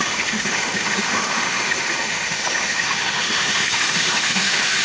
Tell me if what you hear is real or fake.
fake